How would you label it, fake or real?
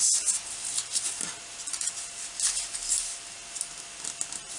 real